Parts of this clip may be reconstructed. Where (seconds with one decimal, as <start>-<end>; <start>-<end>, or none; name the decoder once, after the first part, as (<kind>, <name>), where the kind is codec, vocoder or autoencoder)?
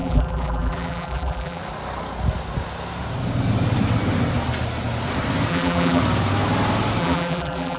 0.0-1.6 (vocoder, BigVGAN v2); 5.5-6.0; 7.0-7.8